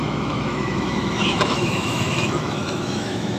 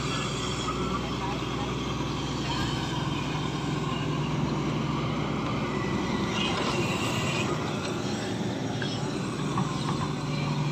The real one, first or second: second